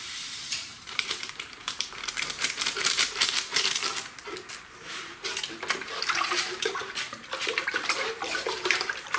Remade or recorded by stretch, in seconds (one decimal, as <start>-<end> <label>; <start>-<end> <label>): 0.0-3.9 remade; 3.9-5.9 recorded; 5.9-6.8 remade; 6.8-7.6 recorded; 7.6-9.2 remade